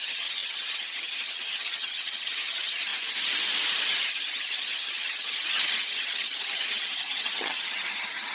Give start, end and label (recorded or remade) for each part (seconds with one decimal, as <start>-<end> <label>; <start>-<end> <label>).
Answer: 0.0-2.9 remade; 2.9-3.8 recorded; 3.8-8.3 remade